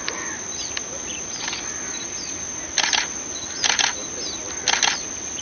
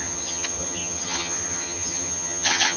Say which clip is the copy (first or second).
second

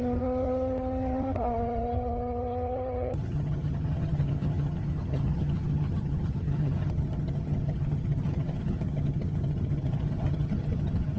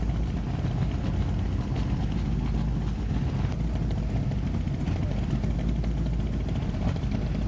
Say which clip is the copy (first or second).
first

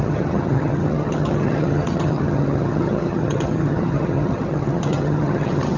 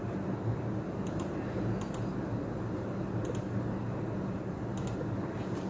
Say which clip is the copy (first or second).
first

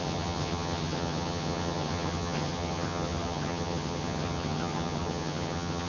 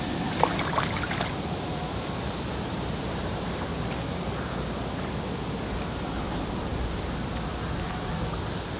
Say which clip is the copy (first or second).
first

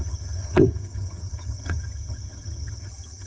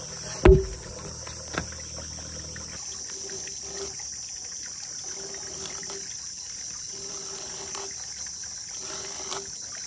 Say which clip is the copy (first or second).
first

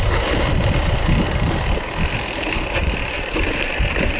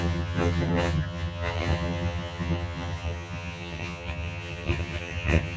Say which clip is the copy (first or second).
second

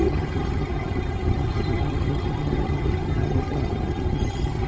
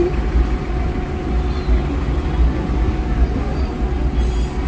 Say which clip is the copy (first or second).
first